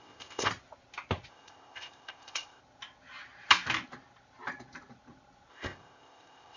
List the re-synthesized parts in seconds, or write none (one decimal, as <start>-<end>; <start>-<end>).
0.0-0.5; 1.3-2.6; 5.5-6.6